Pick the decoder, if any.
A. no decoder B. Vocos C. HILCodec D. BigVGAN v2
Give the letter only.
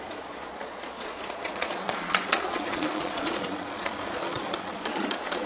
B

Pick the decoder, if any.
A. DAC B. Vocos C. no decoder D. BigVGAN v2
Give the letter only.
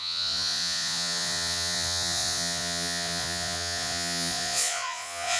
B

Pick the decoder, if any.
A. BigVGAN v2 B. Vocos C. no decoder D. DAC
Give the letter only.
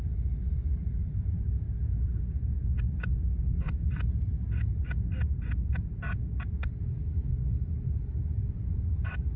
C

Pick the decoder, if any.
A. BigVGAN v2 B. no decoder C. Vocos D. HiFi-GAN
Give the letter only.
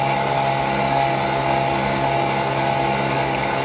B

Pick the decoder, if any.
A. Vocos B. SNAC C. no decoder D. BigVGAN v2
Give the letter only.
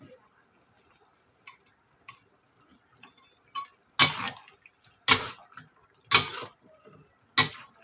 C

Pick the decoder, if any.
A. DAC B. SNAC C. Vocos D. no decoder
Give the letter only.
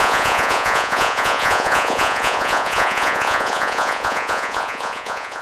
C